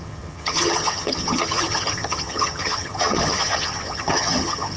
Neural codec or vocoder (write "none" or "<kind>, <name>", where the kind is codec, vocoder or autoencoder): vocoder, HiFi-GAN